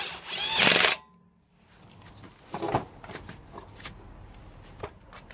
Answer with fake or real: real